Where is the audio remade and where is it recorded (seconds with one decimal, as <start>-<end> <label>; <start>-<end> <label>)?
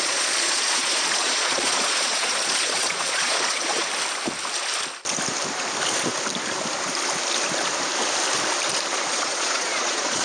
0.0-3.9 remade; 3.9-9.1 recorded; 9.1-10.2 remade